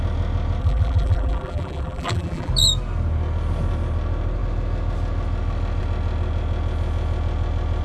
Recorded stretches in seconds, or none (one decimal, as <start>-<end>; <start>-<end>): 0.0-0.6; 2.5-7.8